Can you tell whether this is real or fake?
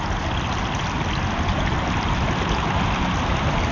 real